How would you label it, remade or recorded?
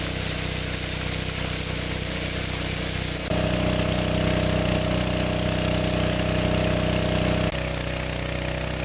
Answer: recorded